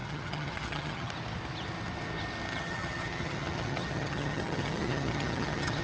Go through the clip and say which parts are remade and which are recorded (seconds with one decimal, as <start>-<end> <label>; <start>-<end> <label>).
0.0-1.1 remade; 1.1-2.5 recorded; 2.5-5.8 remade